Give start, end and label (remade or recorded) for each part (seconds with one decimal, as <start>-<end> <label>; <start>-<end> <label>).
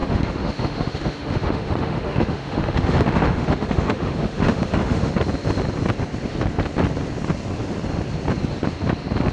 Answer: 0.0-5.1 remade; 5.1-9.3 recorded